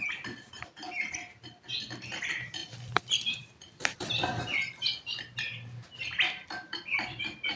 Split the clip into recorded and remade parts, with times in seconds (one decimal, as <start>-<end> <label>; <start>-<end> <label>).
0.0-2.6 recorded; 2.6-7.6 remade